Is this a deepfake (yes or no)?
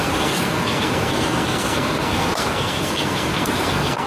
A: yes